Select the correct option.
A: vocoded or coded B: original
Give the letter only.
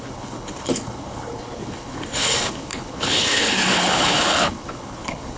A